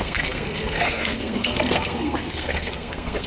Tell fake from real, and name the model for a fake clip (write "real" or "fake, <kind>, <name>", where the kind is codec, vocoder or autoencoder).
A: fake, codec, SNAC